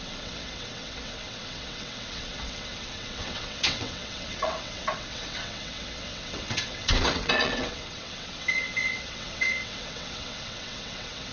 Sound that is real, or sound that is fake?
fake